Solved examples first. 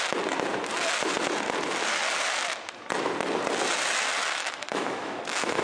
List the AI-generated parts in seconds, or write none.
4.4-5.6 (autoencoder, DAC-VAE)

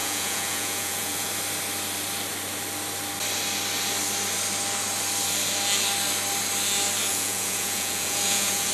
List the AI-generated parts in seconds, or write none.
0.0-1.3 (vocoder, Vocos); 7.1-8.7

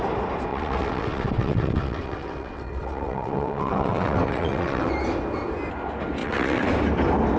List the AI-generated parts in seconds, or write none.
0.5-4.9 (vocoder, WaveNeXt); 6.2-6.7

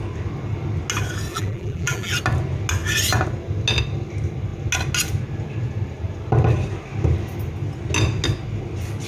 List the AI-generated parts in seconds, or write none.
1.3-2.1 (vocoder, BigVGAN v2)

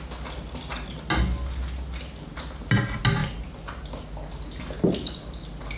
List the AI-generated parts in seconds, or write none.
none